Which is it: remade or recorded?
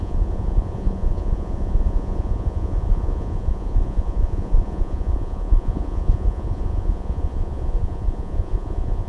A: remade